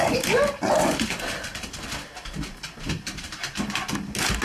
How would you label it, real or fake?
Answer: real